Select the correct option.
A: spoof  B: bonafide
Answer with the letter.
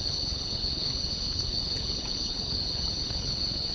A